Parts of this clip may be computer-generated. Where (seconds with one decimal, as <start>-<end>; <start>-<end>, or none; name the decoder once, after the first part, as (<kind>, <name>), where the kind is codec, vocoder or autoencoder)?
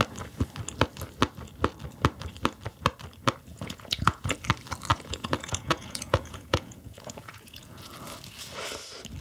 3.5-4.3 (vocoder, Vocos); 4.9-7.9